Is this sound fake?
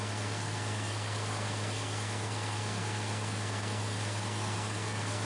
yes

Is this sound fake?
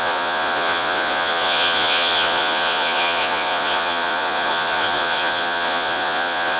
yes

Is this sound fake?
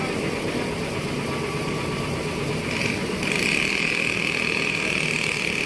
no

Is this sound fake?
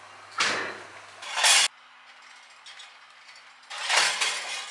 no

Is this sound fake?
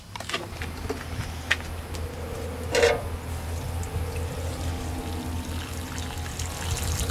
no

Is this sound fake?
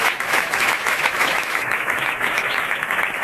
yes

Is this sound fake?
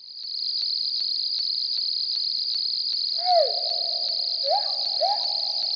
no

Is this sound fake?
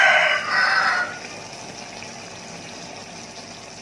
no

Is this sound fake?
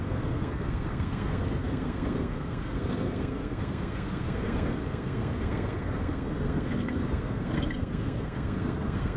yes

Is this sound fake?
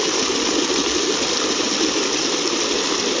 no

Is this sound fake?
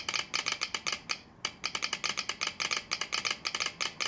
no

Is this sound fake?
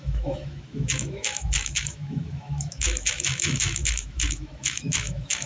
yes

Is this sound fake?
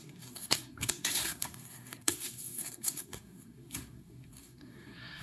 yes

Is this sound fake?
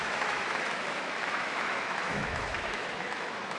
yes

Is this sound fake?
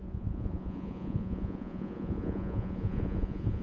yes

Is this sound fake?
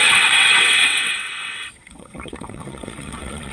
yes